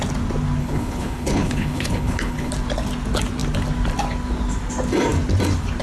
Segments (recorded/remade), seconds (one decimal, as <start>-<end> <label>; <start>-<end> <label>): 0.0-0.6 recorded; 0.6-2.5 remade; 2.5-5.8 recorded